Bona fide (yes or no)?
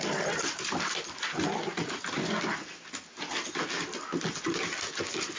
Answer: yes